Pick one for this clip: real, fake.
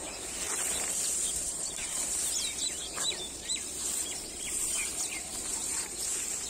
fake